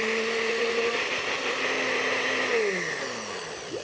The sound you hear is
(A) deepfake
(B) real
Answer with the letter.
B